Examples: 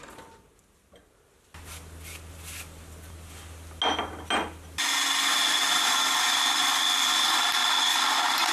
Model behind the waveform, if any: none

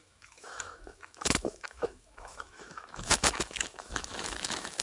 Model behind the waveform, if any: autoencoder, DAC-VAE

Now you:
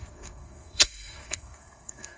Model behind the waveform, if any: codec, SNAC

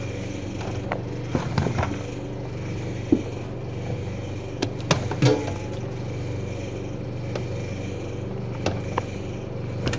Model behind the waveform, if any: none